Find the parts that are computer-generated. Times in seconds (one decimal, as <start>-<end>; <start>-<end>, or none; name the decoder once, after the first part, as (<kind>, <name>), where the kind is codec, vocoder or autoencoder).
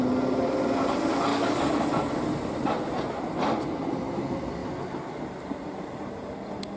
1.3-2.2 (codec, DAC)